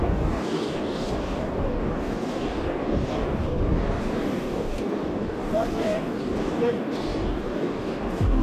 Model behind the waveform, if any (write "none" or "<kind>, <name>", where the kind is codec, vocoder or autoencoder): codec, DAC